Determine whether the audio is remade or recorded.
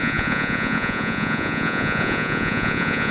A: remade